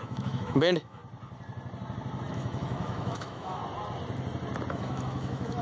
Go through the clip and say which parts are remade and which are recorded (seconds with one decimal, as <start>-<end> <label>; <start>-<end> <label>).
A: 0.0-1.0 remade; 1.0-2.3 recorded; 2.3-3.6 remade; 3.6-4.7 recorded; 4.7-5.6 remade